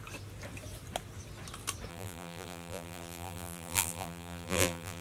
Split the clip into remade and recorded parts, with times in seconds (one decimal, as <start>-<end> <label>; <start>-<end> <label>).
0.0-1.9 recorded; 1.9-5.0 remade